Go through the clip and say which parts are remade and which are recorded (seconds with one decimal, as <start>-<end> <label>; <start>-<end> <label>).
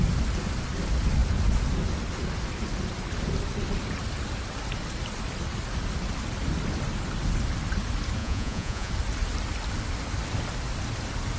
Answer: 0.0-8.2 recorded; 8.2-8.9 remade; 8.9-11.4 recorded